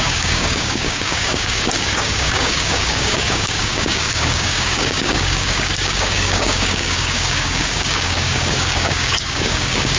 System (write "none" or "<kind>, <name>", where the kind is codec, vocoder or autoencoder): codec, DAC